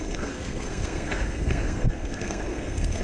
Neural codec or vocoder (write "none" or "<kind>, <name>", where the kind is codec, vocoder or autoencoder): codec, SNAC